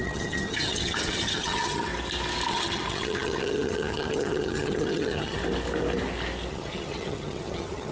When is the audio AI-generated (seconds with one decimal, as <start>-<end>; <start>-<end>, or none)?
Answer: 0.0-1.9; 2.5-5.4; 6.5-7.9